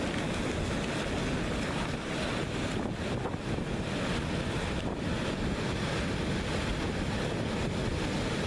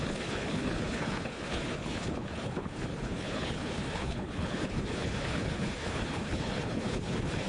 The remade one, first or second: second